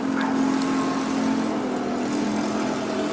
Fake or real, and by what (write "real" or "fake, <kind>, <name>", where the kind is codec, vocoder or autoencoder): real